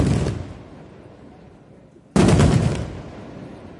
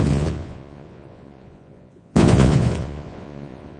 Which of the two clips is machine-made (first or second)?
second